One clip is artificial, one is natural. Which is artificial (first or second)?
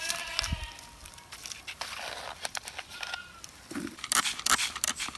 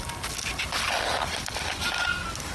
first